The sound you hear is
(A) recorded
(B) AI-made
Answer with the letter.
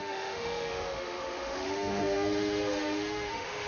B